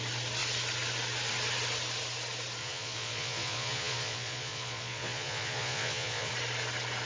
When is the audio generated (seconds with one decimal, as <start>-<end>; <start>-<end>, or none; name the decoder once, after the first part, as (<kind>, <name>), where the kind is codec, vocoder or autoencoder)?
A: 2.6-6.3 (vocoder, Vocos)